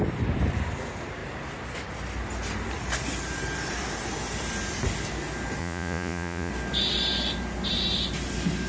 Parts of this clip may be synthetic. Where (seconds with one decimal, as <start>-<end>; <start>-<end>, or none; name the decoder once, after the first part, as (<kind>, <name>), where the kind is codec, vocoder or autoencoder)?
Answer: 5.6-6.5 (vocoder, Vocos)